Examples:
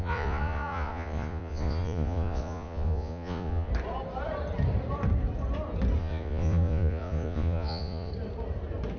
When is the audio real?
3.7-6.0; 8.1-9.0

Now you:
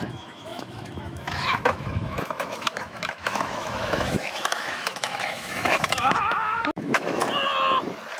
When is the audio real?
7.2-8.2

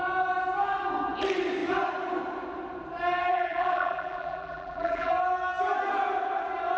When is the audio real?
0.0-3.3; 5.1-6.8

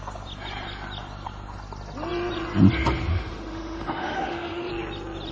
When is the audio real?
0.0-3.1; 4.7-5.3

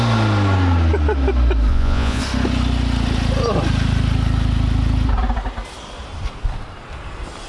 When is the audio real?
0.0-1.7; 2.2-7.5

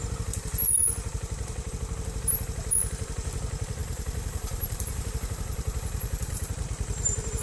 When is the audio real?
0.0-3.8; 6.5-7.4

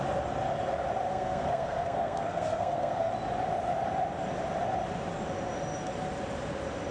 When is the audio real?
0.0-1.1; 3.1-6.9